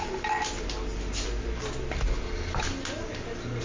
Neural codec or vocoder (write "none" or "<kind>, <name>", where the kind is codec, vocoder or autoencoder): none